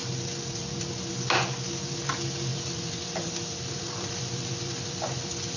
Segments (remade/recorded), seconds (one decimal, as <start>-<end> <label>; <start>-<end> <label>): 0.0-1.1 remade; 1.1-2.5 recorded; 2.5-5.6 remade